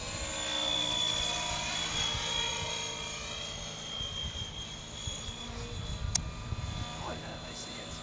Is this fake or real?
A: real